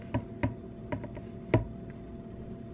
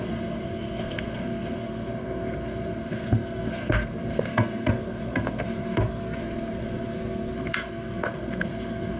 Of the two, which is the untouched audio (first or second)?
first